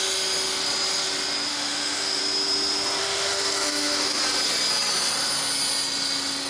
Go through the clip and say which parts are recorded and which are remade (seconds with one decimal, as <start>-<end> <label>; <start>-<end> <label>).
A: 0.0-1.5 recorded; 1.5-2.2 remade; 2.2-3.0 recorded; 3.0-4.2 remade; 4.2-6.5 recorded